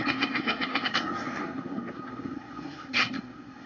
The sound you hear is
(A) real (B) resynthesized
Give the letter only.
B